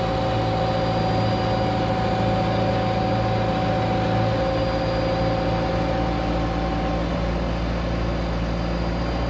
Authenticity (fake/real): real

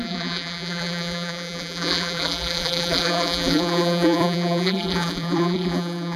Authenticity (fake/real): fake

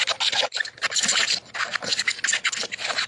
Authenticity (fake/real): real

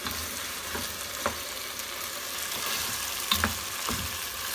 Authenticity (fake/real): real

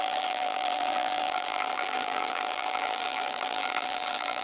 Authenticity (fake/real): fake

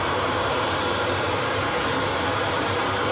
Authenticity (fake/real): real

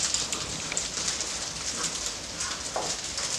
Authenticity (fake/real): real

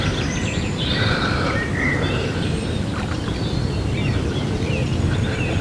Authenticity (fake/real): real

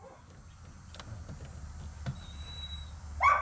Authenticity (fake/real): real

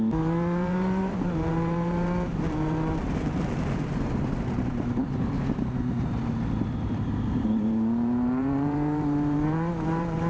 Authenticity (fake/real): fake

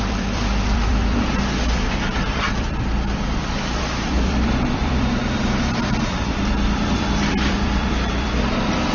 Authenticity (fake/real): fake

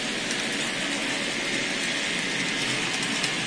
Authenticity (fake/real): real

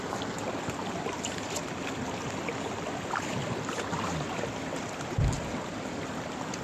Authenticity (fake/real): real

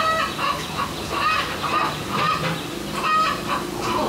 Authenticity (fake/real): real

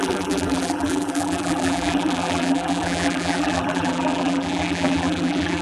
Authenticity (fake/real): fake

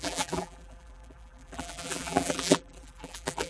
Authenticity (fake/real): fake